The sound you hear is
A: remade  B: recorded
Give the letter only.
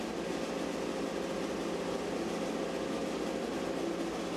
B